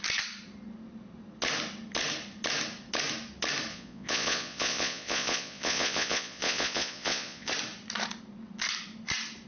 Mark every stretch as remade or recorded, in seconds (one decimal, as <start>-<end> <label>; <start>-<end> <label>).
0.0-3.7 recorded; 3.7-7.5 remade; 7.5-9.5 recorded

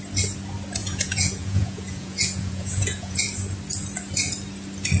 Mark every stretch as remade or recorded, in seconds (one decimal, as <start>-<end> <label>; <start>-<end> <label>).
0.0-0.8 recorded; 0.8-3.2 remade; 3.2-5.0 recorded